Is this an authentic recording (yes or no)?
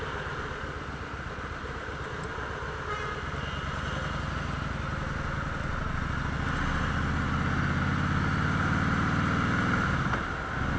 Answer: yes